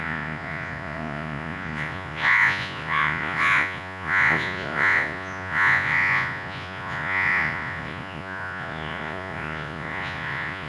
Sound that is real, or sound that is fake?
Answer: fake